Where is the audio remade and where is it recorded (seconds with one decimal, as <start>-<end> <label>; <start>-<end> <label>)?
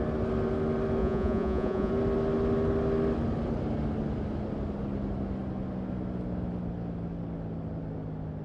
0.0-1.0 recorded; 1.0-1.9 remade; 1.9-8.4 recorded